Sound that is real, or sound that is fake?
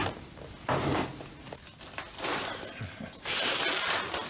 real